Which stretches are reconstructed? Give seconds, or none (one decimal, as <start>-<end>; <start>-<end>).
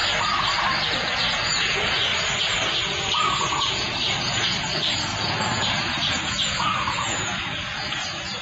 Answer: 0.9-2.1; 2.8-8.4